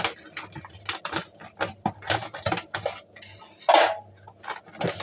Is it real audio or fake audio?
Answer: real